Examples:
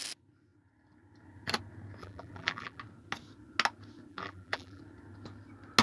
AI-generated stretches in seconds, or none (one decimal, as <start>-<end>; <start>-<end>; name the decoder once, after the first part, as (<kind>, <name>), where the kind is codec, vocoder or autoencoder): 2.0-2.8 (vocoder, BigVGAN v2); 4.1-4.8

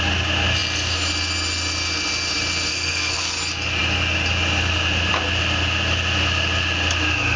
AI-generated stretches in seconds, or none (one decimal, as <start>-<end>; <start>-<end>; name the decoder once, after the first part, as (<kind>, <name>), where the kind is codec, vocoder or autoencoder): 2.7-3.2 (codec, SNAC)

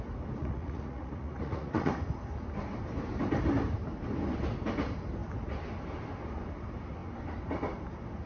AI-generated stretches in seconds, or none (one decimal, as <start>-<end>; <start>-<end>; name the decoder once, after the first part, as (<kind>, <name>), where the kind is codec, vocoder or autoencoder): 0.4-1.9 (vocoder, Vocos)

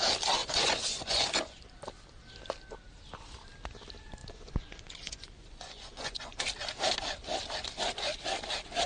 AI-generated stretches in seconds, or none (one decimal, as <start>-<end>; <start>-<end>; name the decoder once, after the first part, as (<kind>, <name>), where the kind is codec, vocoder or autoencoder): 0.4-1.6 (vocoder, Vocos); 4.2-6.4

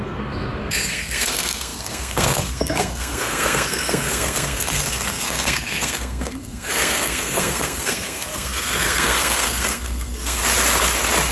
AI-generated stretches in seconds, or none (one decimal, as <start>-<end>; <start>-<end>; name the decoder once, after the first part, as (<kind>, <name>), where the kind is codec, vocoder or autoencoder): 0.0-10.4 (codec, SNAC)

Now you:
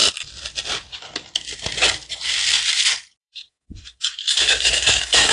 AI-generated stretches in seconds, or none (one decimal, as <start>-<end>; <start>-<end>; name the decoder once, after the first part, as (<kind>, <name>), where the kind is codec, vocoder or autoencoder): 3.2-5.3 (codec, SNAC)